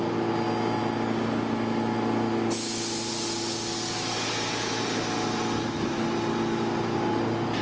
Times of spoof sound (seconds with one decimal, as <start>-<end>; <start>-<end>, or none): none